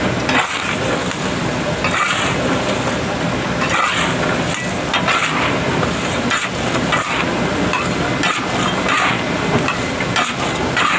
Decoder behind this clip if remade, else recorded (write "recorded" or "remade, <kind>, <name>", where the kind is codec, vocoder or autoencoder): recorded